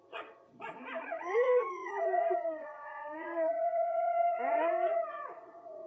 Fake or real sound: fake